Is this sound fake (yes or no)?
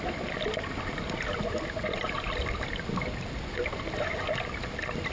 no